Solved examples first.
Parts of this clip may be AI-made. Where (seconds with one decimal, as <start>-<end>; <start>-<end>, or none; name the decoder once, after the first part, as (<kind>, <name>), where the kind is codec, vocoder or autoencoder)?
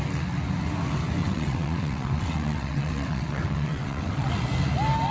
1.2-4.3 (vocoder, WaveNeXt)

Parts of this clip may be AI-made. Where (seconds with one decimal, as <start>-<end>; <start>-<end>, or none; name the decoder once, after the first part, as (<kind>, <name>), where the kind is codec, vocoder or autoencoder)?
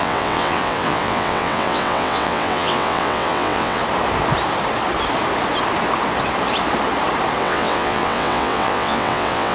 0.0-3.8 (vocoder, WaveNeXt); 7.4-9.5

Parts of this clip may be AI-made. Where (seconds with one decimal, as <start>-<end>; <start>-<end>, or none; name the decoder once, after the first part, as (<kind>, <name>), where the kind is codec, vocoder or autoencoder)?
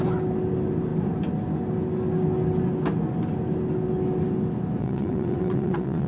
4.8-6.1 (vocoder, WaveNeXt)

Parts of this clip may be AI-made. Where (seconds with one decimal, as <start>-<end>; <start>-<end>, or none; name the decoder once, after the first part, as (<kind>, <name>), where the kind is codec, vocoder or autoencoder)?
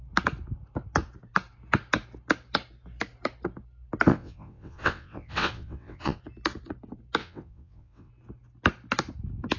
4.1-6.2 (vocoder, WaveNeXt); 7.2-8.1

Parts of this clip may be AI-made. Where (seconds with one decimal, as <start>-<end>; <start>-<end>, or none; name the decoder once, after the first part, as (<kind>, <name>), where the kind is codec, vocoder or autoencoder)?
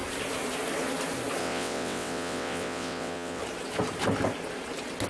1.4-3.4 (vocoder, WaveNeXt)